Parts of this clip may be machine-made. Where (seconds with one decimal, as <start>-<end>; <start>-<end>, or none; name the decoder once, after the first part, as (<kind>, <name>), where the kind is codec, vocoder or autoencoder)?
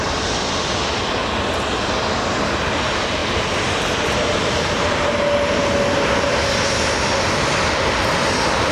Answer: none